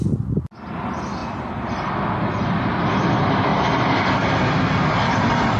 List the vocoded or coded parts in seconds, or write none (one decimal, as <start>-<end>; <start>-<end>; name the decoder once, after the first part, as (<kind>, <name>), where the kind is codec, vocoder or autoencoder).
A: 1.2-1.9 (vocoder, BigVGAN v2); 3.5-4.1